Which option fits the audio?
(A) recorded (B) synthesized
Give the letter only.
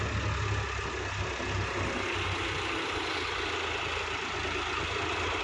A